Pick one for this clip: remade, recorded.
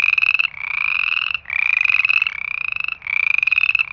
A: recorded